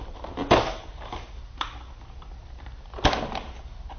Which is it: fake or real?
real